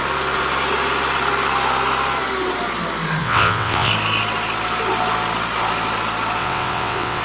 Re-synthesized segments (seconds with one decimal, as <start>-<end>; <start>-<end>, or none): 3.2-3.9; 6.4-7.2

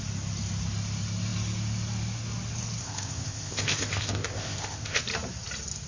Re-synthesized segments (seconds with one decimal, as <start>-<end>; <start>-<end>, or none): 2.8-5.0

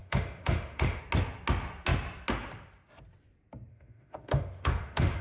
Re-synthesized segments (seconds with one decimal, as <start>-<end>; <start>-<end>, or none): 0.0-1.0; 3.7-5.2

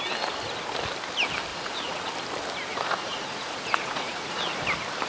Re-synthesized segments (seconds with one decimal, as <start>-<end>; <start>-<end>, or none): 1.5-2.1; 2.7-4.4